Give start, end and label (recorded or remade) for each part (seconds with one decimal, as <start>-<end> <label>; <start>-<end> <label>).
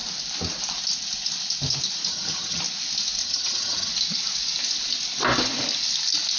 0.0-2.1 recorded; 2.1-2.6 remade; 2.6-3.2 recorded; 3.2-3.9 remade; 3.9-6.4 recorded